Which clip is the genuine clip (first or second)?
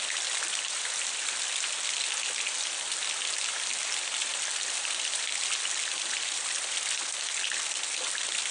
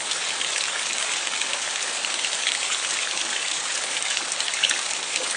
first